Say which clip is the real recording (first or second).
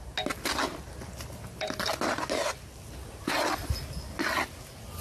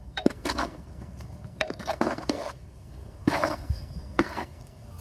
first